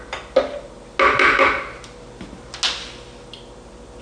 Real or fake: real